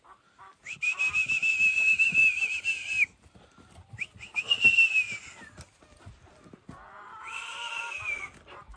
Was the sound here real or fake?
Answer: real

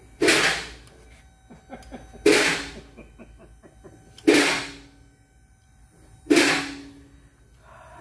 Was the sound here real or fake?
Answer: real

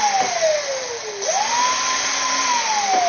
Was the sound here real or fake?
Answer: real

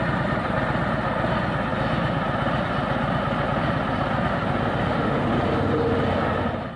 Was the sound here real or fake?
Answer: real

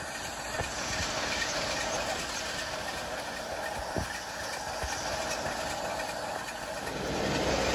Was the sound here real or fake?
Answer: real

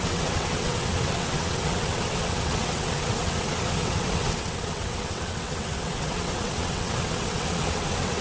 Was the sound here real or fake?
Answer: fake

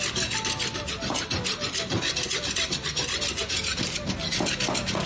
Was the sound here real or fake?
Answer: real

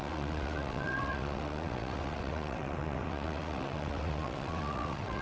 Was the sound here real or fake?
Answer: fake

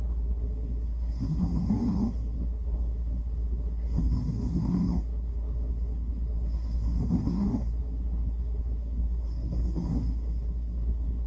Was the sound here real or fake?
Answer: fake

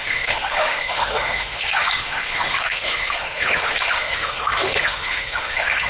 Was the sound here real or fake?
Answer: fake